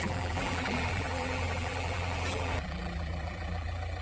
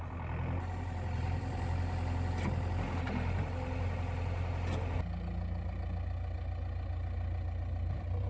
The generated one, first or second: first